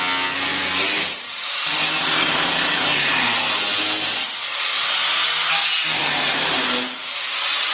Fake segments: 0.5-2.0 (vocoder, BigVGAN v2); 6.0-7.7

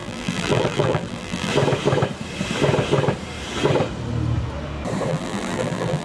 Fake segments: 0.0-1.5 (vocoder, BigVGAN v2); 5.1-6.0

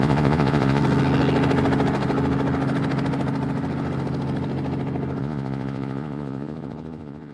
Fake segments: 0.0-0.8 (vocoder, Vocos); 5.2-7.3

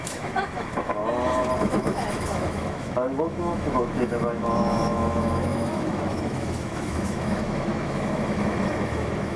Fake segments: 0.0-1.0 (autoencoder, DAC-VAE); 1.6-9.4